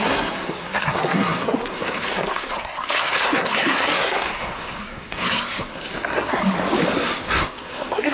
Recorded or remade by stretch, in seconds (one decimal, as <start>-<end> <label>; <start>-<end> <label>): 0.0-6.4 remade; 6.4-7.4 recorded; 7.4-8.1 remade